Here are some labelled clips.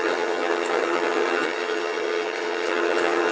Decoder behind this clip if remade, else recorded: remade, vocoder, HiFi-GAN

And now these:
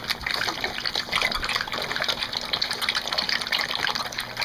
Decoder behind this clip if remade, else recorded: recorded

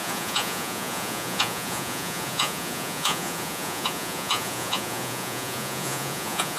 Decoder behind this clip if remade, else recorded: remade, vocoder, Vocos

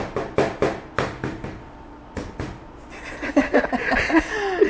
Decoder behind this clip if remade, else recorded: recorded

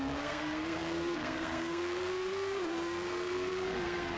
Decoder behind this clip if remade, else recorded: remade, codec, SNAC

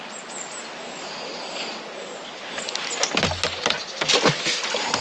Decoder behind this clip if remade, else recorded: recorded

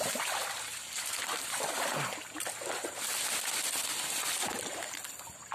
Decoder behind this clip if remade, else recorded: recorded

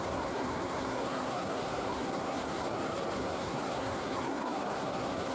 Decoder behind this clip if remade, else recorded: remade, codec, SNAC